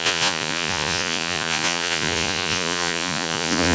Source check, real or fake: fake